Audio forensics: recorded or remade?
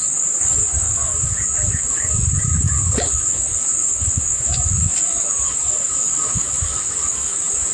remade